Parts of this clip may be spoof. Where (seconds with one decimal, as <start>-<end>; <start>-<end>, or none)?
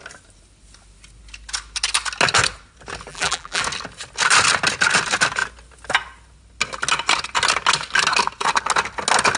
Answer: 3.1-3.6